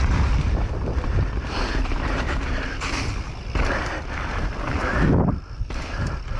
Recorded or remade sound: remade